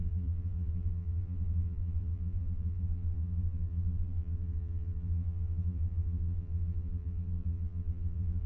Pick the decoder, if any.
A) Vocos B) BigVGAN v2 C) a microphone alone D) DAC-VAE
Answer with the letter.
B